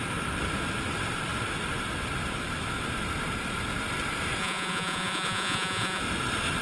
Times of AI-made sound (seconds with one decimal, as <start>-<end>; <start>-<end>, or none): 4.4-6.0